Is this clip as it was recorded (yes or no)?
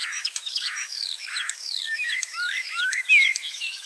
no